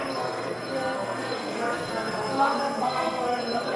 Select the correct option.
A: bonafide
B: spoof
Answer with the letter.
B